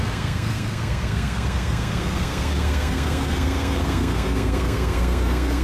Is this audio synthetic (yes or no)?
yes